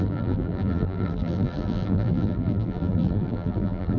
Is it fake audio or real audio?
fake